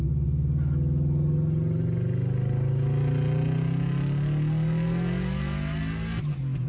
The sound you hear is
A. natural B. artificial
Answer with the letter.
A